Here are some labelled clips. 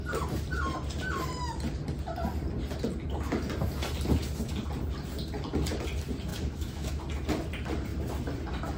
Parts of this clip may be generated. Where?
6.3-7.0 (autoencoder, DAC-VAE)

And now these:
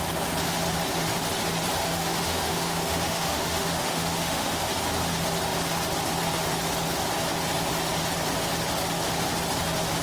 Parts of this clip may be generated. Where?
1.8-4.7 (autoencoder, DAC-VAE)

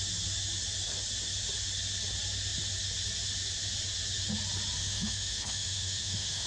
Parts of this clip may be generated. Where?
4.8-6.5 (autoencoder, DAC-VAE)

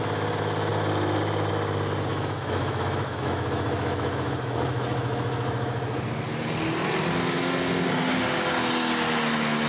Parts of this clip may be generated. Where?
2.1-6.0 (autoencoder, DAC-VAE)

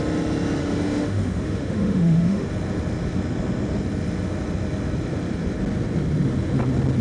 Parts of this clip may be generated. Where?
0.6-2.5 (autoencoder, DAC-VAE)

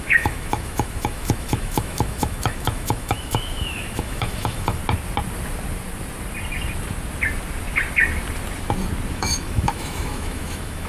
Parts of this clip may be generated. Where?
0.0-4.8 (autoencoder, DAC-VAE); 9.1-10.9

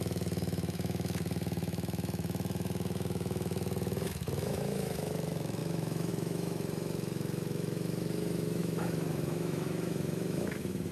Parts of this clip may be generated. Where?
0.0-10.9 (autoencoder, DAC-VAE)

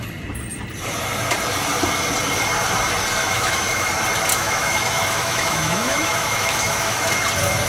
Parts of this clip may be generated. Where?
3.2-3.9 (autoencoder, DAC-VAE); 4.3-7.1